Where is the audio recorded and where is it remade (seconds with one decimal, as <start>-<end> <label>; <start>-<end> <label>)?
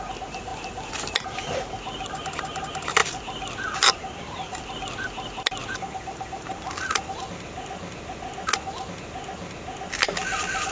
0.0-3.0 recorded; 3.0-4.7 remade; 4.7-5.6 recorded; 5.6-7.8 remade; 7.8-10.7 recorded